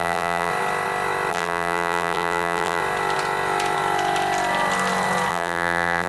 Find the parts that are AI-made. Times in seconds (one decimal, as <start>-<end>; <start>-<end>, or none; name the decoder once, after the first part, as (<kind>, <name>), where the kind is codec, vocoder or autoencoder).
0.0-0.5 (vocoder, BigVGAN v2); 1.3-2.8; 5.3-6.1